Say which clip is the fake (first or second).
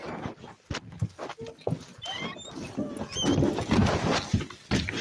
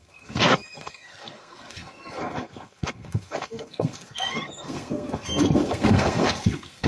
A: second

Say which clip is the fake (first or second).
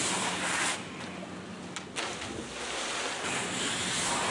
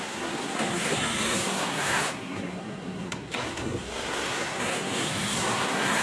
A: second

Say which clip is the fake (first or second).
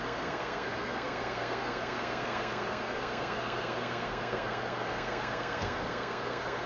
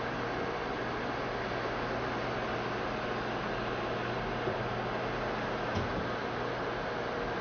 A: first